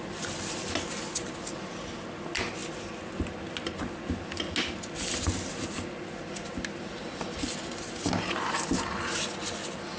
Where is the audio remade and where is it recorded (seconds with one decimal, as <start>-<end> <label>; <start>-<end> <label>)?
0.0-10.0 recorded